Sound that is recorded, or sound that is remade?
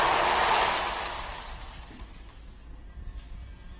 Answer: recorded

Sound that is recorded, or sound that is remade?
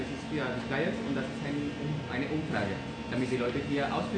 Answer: recorded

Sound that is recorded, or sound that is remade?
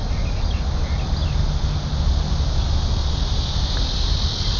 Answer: recorded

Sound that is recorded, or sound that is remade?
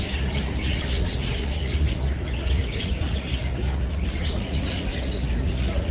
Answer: remade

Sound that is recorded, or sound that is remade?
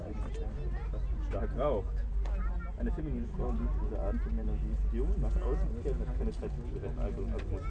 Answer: recorded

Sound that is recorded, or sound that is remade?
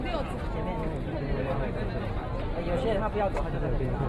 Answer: recorded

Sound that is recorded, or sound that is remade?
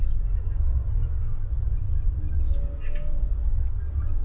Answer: recorded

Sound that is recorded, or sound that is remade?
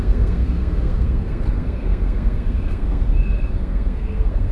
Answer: remade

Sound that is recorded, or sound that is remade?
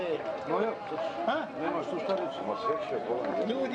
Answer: recorded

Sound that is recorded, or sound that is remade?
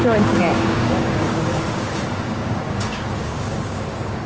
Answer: remade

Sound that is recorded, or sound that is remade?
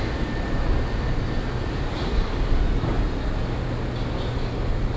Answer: recorded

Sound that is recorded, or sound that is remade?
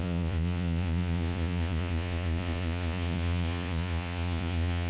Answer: remade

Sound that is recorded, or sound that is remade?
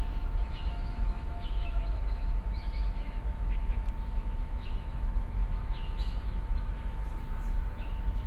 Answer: remade